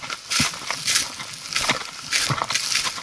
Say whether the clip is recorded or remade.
recorded